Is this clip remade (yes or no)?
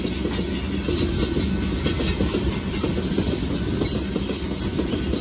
no